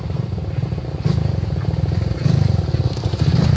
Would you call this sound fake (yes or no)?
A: no